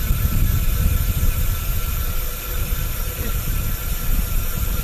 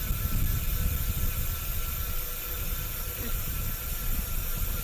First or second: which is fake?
first